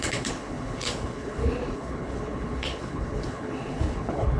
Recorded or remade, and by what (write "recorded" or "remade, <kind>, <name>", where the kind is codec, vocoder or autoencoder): remade, codec, HILCodec